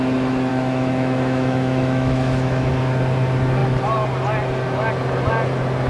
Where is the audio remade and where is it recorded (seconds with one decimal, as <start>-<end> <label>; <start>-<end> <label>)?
0.0-0.5 recorded; 0.5-2.7 remade; 2.7-5.9 recorded